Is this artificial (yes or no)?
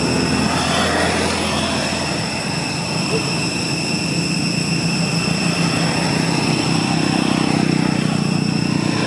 no